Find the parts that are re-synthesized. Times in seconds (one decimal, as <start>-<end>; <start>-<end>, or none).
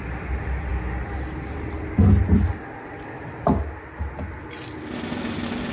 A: none